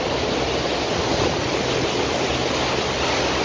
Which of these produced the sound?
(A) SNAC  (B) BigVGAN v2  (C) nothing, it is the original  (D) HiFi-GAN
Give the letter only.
C